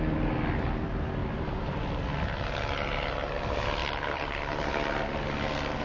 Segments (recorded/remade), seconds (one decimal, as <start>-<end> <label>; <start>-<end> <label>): 0.0-1.2 recorded; 1.2-1.8 remade; 1.8-3.8 recorded; 3.8-4.7 remade; 4.7-5.8 recorded